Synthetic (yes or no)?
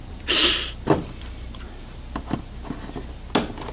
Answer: no